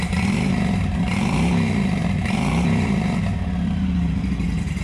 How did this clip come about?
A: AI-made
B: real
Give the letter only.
A